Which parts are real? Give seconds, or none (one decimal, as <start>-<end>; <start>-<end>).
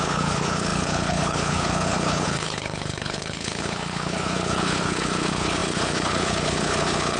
none